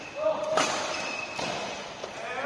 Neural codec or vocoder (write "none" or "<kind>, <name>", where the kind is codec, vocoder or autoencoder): none